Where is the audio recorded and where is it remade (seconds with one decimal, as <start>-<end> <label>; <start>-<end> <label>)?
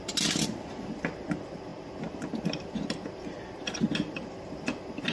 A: 0.0-5.1 recorded